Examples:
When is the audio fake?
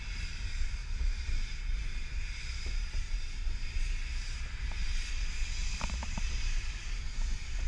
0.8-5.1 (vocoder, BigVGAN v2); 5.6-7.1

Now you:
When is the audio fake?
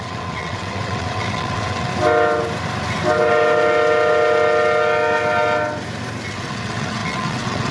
0.0-1.9 (vocoder, WaveNeXt); 6.3-7.7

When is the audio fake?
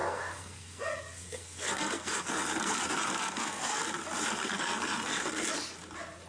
0.0-3.8 (codec, SNAC); 4.4-5.3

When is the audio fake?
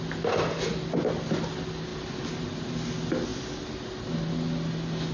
none